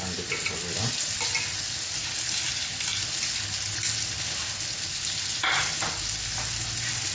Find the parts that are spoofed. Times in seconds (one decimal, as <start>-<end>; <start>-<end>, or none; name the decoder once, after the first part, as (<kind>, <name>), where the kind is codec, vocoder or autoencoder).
none

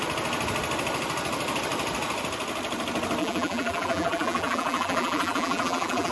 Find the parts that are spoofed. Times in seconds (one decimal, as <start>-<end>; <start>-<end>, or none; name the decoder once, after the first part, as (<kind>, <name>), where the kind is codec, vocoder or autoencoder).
3.2-6.1 (vocoder, BigVGAN v2)

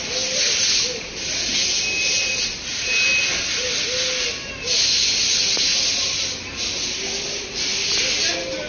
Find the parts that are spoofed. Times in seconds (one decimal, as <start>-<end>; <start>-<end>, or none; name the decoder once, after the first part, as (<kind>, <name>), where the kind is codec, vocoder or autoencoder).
none

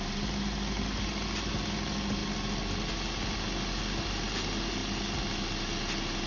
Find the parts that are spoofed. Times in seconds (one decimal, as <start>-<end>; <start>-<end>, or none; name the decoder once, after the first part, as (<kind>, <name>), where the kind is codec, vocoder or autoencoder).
none

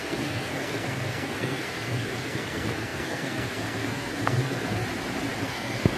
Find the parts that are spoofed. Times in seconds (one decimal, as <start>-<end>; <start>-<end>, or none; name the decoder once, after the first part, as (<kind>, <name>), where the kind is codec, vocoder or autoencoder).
0.0-4.8 (codec, SNAC); 5.4-6.0

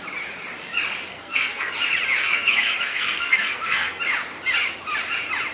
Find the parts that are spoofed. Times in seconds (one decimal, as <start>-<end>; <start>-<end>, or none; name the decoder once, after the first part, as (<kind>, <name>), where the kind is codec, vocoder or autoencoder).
1.1-1.7 (codec, SNAC); 2.2-4.0

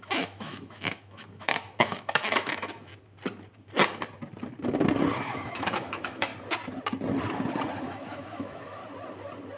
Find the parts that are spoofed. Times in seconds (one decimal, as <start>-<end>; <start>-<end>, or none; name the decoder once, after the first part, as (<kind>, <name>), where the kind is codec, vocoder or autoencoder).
0.0-2.9 (autoencoder, DAC-VAE); 5.2-6.3; 7.8-8.8

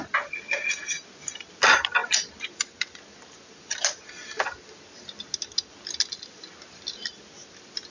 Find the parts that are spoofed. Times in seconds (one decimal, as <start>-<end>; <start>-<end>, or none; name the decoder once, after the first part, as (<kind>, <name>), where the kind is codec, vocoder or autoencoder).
none